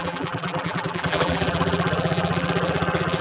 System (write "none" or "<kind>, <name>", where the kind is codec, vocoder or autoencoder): vocoder, BigVGAN v2